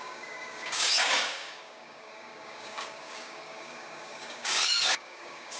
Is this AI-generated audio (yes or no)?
yes